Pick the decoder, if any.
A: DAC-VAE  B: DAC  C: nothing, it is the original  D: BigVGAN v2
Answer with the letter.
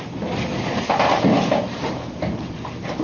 C